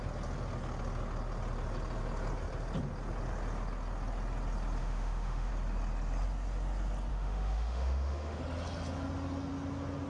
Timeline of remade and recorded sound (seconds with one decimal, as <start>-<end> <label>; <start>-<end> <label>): 0.0-4.8 recorded; 4.8-5.5 remade; 5.5-7.1 recorded; 7.1-8.4 remade; 8.4-10.1 recorded